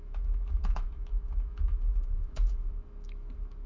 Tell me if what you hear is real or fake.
fake